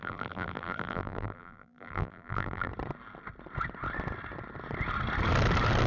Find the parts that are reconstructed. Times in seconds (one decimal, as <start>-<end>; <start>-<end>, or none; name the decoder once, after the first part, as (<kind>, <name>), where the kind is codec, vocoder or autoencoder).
0.0-2.7 (vocoder, BigVGAN v2)